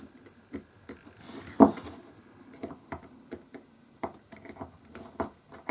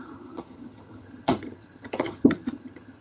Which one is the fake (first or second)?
second